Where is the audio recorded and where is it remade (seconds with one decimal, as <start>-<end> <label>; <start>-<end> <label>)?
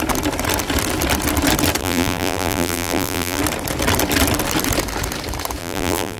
0.0-1.8 recorded; 1.8-3.4 remade; 3.4-5.6 recorded; 5.6-6.2 remade